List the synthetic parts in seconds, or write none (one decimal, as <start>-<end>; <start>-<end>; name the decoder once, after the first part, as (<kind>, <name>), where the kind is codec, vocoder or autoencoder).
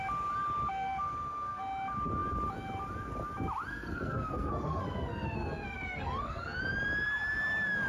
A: 0.7-1.6 (codec, SNAC); 3.7-6.6